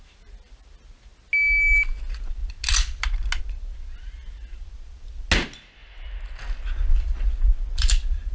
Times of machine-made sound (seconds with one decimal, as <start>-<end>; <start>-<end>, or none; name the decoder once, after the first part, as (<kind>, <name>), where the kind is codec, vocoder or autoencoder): none